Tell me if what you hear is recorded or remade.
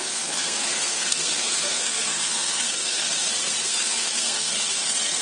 remade